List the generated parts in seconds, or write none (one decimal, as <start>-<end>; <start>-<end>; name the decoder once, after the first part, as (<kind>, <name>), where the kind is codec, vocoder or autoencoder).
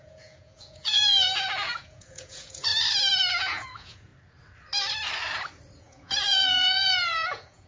0.0-2.7 (vocoder, Vocos); 3.3-4.1; 5.8-7.7